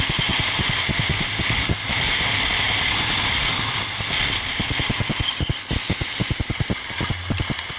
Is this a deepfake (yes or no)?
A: no